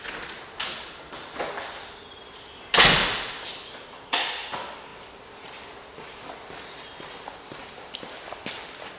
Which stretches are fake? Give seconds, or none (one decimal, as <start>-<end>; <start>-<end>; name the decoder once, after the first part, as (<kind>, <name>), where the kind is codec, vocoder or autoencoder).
none

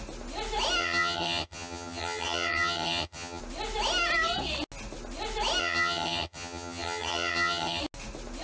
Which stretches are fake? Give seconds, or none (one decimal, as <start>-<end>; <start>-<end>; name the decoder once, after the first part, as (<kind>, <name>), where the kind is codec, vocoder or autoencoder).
0.8-3.4 (vocoder, HiFi-GAN); 5.6-7.8

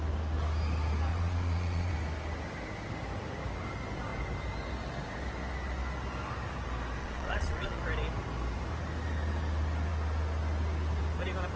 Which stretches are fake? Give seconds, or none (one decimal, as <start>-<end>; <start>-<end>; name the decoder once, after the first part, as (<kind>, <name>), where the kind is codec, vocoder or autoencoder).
1.1-1.9 (vocoder, Vocos); 7.0-7.8

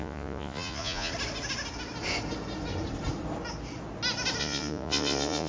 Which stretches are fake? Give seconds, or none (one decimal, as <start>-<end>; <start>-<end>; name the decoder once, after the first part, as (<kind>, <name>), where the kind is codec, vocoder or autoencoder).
0.0-1.1 (vocoder, Vocos); 4.4-5.5

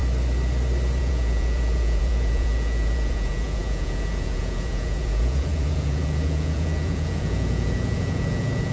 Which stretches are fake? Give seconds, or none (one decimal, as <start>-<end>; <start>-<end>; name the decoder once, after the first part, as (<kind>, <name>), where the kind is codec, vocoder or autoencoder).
1.0-8.7 (vocoder, Vocos)

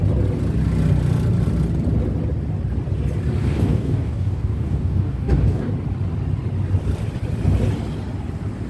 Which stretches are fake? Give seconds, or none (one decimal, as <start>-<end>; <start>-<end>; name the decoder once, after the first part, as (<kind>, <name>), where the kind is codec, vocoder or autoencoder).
3.4-5.7 (codec, DAC)

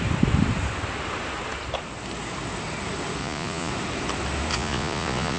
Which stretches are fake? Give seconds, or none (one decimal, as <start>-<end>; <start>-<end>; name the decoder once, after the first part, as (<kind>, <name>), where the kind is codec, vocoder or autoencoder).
3.2-3.7 (vocoder, Vocos); 4.5-5.4